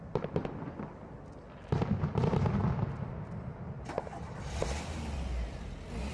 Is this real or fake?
real